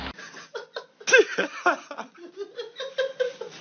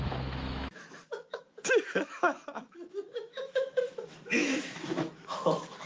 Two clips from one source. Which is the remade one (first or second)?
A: second